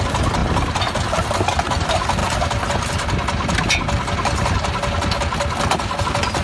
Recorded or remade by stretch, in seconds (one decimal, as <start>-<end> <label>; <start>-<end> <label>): 0.0-6.4 recorded